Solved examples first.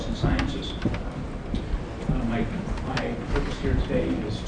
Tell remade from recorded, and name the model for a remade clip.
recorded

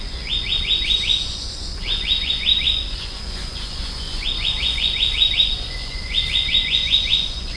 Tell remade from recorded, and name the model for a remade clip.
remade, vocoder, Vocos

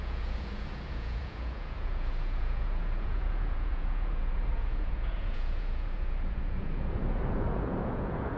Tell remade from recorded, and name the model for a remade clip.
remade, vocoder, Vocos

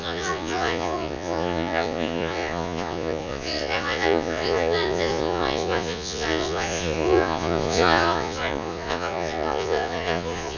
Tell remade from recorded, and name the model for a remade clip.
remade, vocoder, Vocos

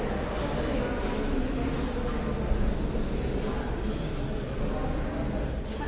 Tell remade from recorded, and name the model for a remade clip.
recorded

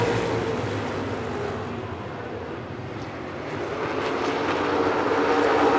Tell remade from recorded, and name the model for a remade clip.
recorded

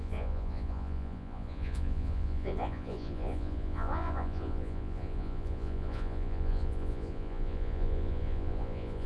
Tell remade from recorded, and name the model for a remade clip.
remade, vocoder, Vocos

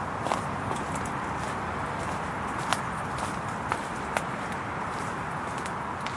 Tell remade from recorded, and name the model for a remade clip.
recorded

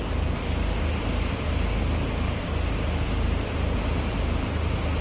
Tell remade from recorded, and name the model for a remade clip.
recorded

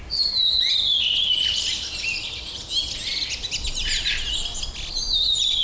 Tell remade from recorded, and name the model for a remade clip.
recorded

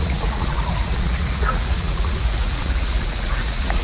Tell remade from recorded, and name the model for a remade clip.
remade, vocoder, Vocos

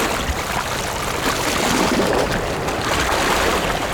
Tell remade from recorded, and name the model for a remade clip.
recorded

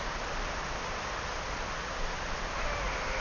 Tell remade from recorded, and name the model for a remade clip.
recorded